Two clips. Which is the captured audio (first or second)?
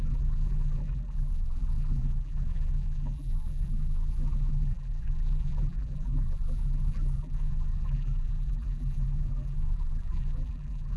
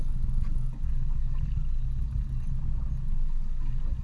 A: second